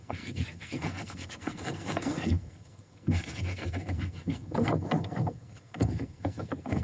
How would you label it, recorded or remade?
remade